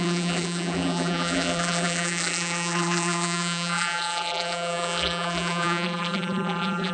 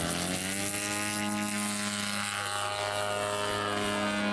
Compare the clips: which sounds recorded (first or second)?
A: second